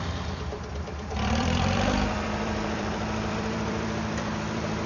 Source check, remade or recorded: remade